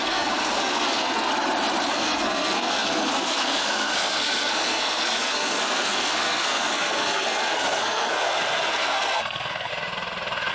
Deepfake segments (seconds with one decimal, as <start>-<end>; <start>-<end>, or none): 0.0-1.3; 1.9-9.7